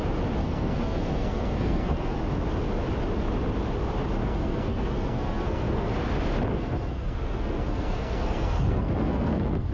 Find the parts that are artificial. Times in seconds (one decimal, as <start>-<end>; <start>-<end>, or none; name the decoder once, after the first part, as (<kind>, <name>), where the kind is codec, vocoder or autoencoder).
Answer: 0.4-2.2 (codec, SNAC); 4.2-5.9; 6.5-9.7